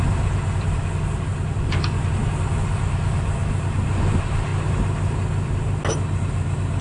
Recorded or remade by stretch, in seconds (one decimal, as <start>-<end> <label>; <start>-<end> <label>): 0.0-6.8 recorded